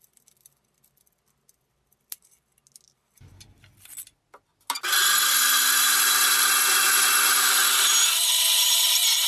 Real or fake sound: real